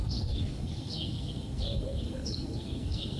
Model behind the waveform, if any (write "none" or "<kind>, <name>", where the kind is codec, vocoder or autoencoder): codec, SNAC